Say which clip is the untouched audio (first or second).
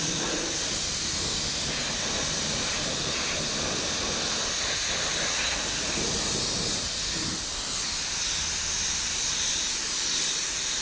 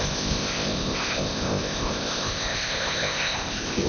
first